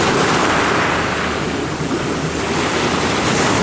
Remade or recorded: recorded